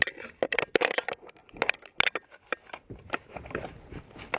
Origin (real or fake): real